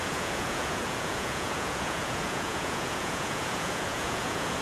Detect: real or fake fake